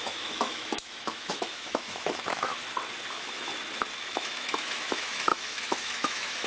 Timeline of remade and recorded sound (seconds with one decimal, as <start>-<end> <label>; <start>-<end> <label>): 0.0-2.5 remade; 2.5-3.1 recorded; 3.1-3.5 remade; 3.5-4.0 recorded; 4.0-6.5 remade